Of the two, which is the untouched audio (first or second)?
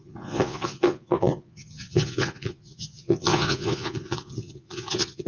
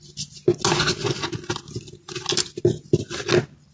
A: second